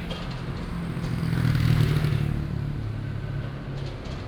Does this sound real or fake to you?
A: real